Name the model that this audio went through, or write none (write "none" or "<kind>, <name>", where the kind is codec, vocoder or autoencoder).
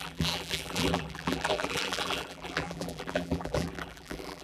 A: vocoder, BigVGAN v2